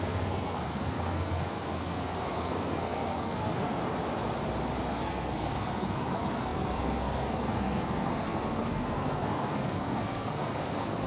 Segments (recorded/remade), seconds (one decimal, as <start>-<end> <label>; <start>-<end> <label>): 0.0-3.8 remade; 3.8-4.9 recorded; 4.9-11.1 remade

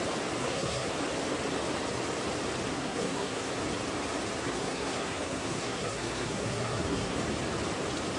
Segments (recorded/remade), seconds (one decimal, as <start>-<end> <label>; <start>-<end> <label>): 0.0-0.4 recorded; 0.4-0.9 remade; 0.9-2.7 recorded; 2.7-3.5 remade; 3.5-4.4 recorded; 4.4-7.2 remade; 7.2-8.2 recorded

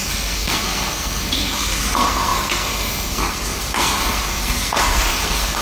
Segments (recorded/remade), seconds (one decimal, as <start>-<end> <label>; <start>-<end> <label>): 0.0-5.6 remade

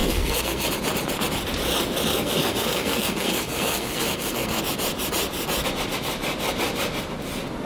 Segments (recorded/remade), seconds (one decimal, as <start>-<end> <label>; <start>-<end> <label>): 0.0-0.7 remade; 0.7-2.1 recorded; 2.1-4.6 remade; 4.6-7.7 recorded